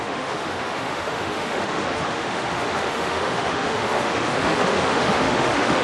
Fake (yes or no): yes